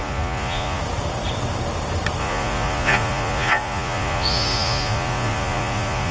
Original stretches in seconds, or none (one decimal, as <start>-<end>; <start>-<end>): 0.8-2.2